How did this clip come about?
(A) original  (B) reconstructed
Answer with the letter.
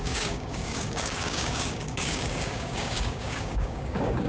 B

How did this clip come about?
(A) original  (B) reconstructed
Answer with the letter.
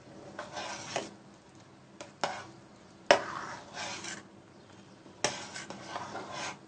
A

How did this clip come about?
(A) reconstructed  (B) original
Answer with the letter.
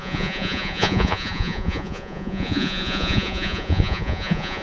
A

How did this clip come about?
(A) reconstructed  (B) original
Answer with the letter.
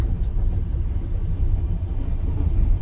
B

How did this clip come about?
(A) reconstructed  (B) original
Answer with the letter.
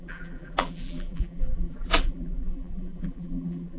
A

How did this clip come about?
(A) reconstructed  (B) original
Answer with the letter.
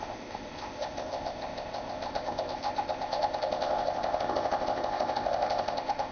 A